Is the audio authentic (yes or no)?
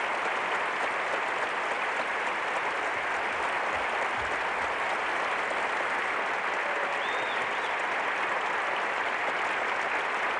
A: yes